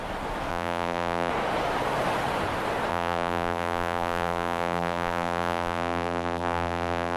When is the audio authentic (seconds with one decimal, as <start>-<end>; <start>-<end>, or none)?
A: 0.0-0.5; 1.3-2.9